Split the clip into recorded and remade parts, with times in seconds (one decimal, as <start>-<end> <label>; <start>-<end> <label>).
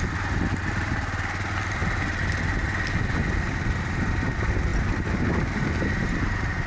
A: 0.0-6.7 recorded